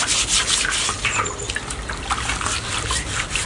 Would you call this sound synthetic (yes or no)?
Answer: no